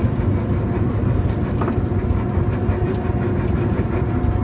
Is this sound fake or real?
real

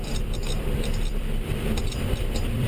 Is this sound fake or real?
fake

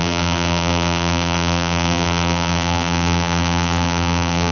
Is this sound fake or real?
fake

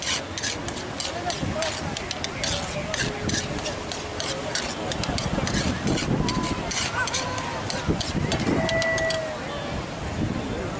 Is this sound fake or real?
real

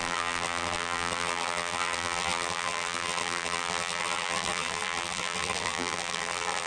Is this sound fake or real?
fake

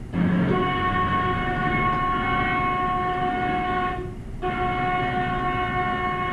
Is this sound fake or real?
real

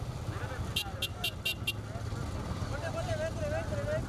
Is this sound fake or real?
real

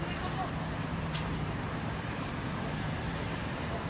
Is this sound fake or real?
fake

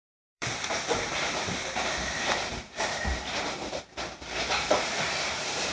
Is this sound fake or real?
fake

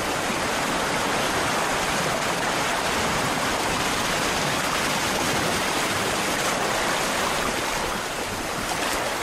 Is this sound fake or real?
real